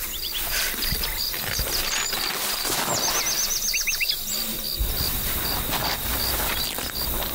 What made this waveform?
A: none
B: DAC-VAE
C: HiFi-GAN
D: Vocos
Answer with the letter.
A